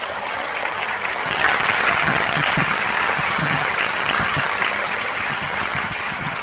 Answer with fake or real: fake